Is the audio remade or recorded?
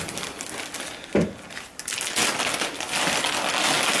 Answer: recorded